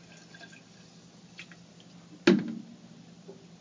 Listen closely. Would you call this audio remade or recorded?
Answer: recorded